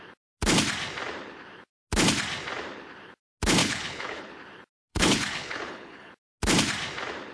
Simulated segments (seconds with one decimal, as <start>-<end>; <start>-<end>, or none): 3.6-4.3; 4.9-6.1